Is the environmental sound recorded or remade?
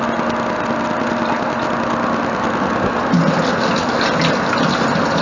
recorded